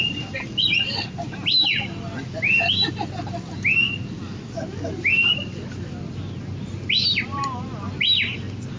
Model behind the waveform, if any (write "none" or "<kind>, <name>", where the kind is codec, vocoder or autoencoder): none